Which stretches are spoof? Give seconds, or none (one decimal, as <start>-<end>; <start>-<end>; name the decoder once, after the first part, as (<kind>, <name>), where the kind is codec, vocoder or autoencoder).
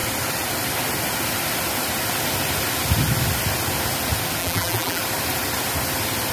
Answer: 4.4-5.0 (vocoder, BigVGAN v2)